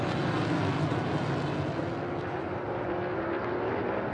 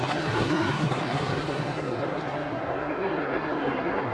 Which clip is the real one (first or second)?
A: first